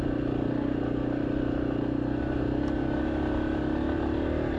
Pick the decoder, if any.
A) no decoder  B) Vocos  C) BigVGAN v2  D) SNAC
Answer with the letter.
A